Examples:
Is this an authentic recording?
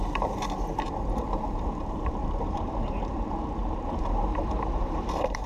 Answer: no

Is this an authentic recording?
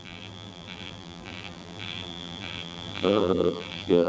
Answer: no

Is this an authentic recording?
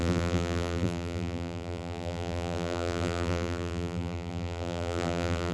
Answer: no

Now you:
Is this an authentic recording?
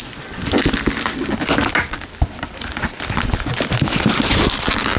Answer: no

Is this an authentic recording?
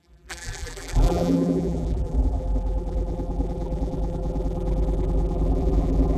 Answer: no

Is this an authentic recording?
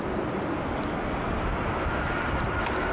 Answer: yes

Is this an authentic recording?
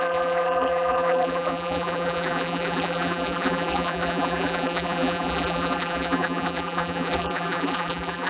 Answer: no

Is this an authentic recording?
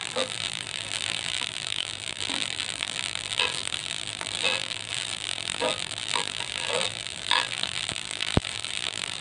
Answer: no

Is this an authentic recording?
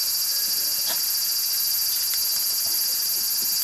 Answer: yes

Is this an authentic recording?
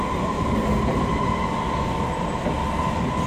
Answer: yes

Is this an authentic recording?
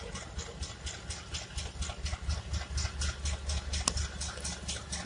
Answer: yes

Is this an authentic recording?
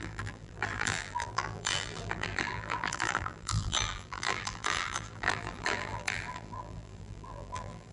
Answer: no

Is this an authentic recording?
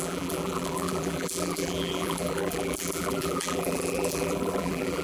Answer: no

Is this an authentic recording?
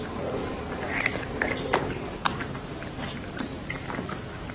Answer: no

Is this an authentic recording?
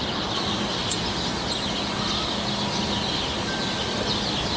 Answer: yes